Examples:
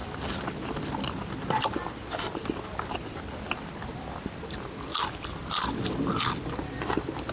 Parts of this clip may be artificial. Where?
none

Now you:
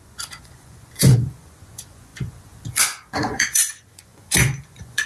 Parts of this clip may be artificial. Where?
0.0-5.1 (vocoder, Vocos)

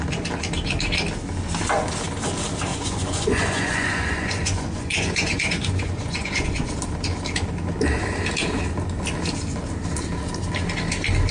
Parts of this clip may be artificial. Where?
2.7-6.7 (vocoder, Vocos)

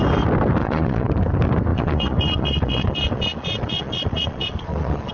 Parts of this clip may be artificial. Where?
0.6-1.1 (vocoder, Vocos); 1.7-5.1

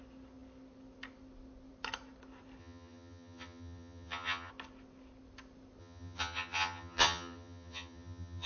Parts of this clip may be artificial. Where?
2.6-4.5 (vocoder, HiFi-GAN); 5.8-8.5